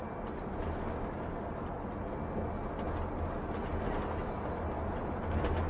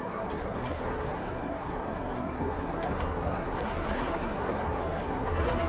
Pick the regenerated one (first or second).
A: second